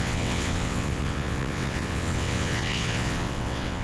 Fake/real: fake